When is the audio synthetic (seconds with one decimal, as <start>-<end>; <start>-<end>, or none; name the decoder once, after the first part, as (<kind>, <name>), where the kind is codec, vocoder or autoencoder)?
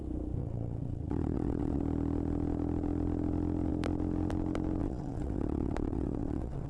0.4-1.8 (vocoder, WaveNeXt); 4.8-6.7